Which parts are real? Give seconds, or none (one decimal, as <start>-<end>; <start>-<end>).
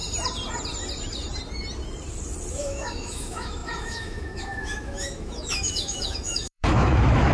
0.0-2.5